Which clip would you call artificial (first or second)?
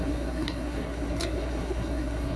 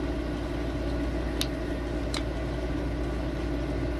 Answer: first